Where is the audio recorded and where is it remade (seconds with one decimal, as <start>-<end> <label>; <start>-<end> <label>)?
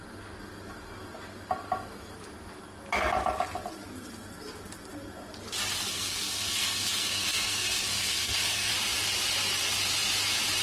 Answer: 0.0-5.9 recorded; 5.9-8.7 remade; 8.7-10.6 recorded